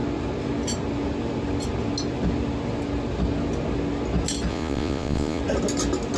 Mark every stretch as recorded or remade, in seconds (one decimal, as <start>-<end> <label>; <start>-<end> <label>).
0.0-4.5 recorded; 4.5-5.4 remade; 5.4-6.2 recorded